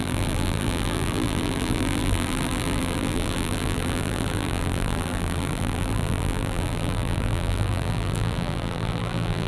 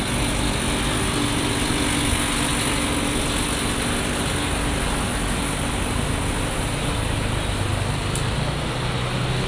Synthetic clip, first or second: first